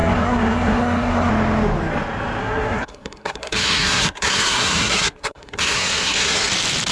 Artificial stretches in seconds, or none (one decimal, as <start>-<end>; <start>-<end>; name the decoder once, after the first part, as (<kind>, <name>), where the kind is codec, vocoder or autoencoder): 0.0-1.3 (codec, SNAC); 2.4-6.5